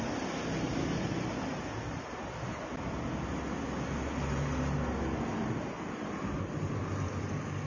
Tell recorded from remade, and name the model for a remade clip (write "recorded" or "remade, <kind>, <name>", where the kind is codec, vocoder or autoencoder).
recorded